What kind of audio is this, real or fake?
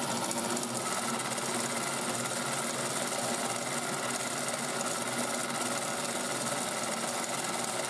real